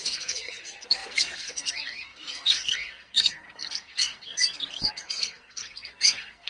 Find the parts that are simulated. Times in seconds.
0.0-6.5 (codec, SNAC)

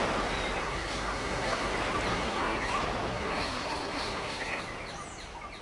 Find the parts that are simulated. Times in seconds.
0.6-1.7 (codec, SNAC); 2.1-2.7; 3.1-4.6